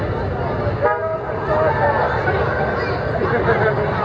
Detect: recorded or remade recorded